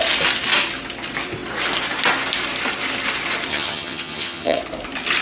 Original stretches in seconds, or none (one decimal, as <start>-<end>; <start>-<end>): 0.0-3.5; 4.6-5.2